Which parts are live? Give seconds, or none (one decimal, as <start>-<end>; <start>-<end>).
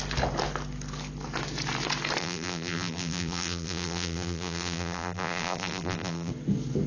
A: 0.0-2.2; 6.3-6.9